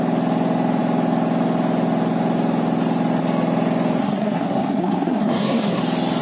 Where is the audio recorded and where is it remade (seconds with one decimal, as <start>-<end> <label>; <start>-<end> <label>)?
0.0-4.0 recorded; 4.0-5.8 remade; 5.8-6.2 recorded